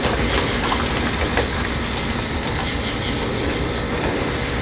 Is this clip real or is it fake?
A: real